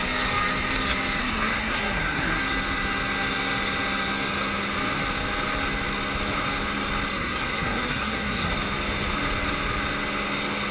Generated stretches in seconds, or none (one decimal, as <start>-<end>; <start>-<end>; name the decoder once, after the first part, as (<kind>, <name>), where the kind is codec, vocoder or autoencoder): 1.2-2.4 (codec, SNAC); 7.1-8.5